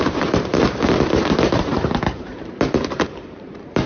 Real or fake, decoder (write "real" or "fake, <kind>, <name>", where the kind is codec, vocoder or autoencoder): fake, vocoder, BigVGAN v2